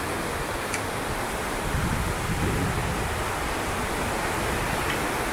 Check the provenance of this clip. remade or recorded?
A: recorded